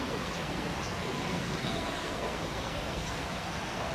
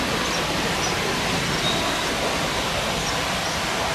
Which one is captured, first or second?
second